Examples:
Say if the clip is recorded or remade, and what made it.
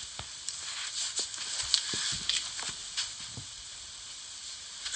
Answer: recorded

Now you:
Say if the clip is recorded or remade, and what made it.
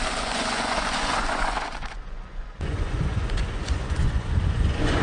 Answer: remade, vocoder, Vocos